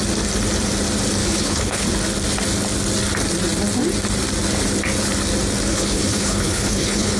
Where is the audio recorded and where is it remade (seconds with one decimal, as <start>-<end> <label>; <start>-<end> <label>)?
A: 0.0-1.2 recorded; 1.2-1.9 remade; 1.9-5.7 recorded; 5.7-7.2 remade